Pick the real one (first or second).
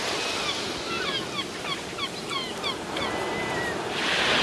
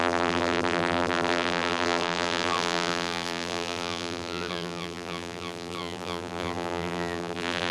first